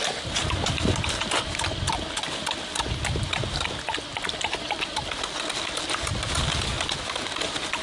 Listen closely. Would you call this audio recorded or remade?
recorded